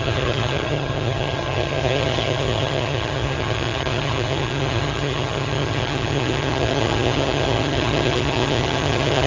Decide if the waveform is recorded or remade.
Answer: remade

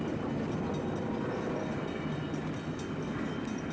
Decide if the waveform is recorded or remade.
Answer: recorded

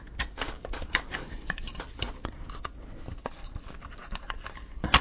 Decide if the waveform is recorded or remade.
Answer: recorded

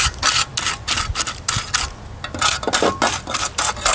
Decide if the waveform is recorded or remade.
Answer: recorded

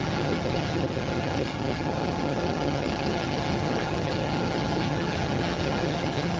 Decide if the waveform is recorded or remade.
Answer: remade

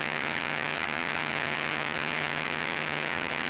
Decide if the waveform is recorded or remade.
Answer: remade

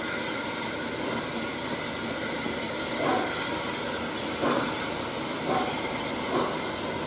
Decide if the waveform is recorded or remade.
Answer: recorded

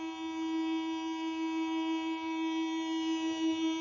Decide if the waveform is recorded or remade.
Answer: recorded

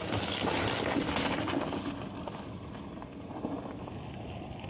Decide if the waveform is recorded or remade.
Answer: recorded